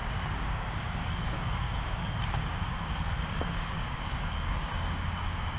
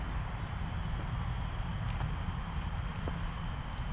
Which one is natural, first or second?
second